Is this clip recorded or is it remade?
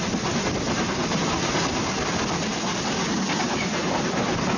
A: recorded